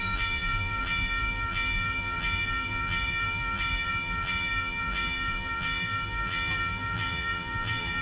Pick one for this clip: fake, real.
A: fake